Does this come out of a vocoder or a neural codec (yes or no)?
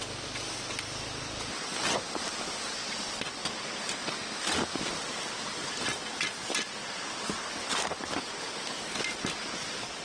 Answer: no